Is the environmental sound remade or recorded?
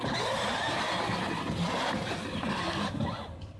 recorded